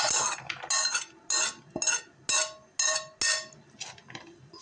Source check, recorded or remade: recorded